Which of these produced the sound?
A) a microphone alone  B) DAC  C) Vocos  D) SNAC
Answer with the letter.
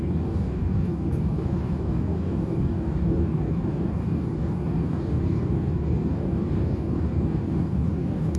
B